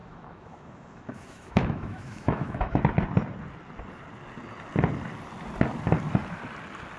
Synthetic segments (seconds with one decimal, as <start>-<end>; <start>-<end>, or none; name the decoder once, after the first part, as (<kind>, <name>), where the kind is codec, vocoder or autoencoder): 0.0-2.8 (autoencoder, DAC-VAE)